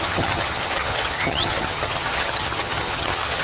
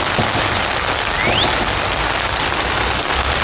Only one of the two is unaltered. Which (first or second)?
second